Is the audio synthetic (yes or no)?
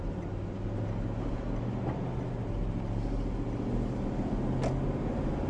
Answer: no